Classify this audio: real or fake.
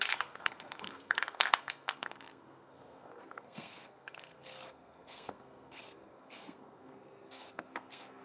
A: fake